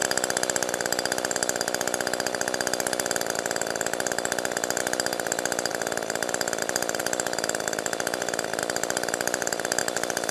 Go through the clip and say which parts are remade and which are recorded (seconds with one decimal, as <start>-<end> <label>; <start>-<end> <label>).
0.0-5.7 recorded; 5.7-7.0 remade; 7.0-8.6 recorded; 8.6-9.8 remade; 9.8-10.3 recorded